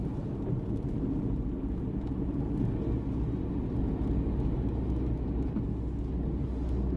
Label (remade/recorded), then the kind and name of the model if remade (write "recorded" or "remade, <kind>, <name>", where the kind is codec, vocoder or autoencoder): recorded